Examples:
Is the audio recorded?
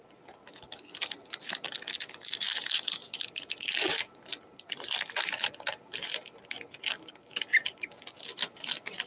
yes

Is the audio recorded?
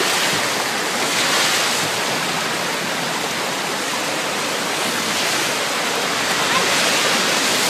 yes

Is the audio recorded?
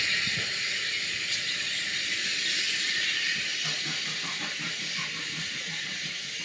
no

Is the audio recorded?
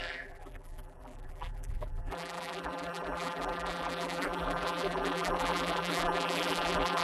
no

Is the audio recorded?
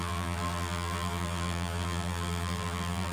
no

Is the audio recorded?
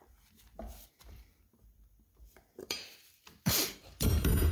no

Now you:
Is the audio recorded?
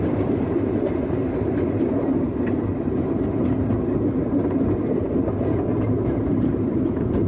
no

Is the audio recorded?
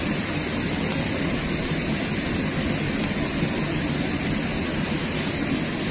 yes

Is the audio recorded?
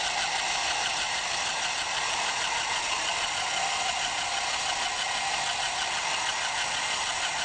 yes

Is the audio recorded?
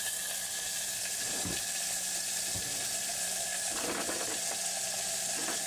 yes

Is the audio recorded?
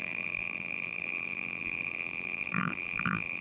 no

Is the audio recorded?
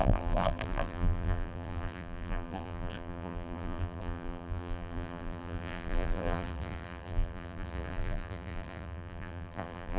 no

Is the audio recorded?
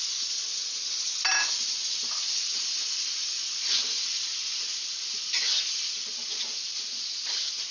yes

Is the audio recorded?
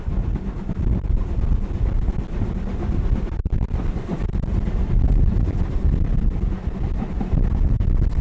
yes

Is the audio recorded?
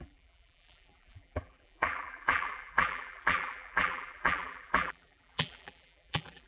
no